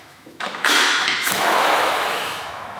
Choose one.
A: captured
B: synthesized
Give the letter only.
B